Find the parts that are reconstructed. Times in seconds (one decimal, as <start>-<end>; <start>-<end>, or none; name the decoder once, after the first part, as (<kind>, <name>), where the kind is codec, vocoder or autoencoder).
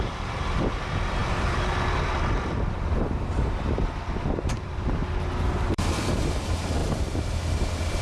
0.0-5.0 (vocoder, BigVGAN v2); 5.7-8.0